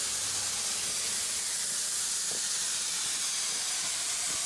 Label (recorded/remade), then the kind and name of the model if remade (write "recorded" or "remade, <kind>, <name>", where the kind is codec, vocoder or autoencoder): recorded